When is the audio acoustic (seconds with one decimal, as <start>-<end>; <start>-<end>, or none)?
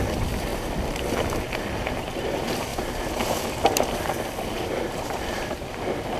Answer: 0.5-1.5; 2.7-3.5